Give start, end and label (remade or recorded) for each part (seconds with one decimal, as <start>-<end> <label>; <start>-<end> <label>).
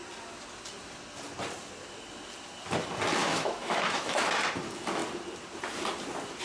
0.0-3.2 recorded; 3.2-4.2 remade; 4.2-6.4 recorded